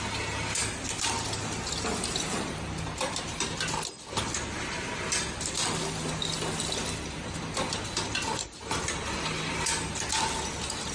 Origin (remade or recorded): recorded